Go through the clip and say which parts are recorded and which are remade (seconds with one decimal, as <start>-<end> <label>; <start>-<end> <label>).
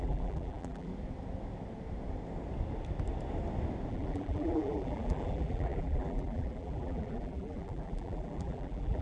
0.0-0.9 remade; 0.9-3.9 recorded; 3.9-9.0 remade